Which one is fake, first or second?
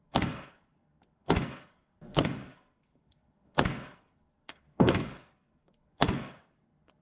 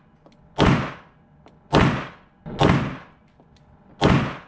first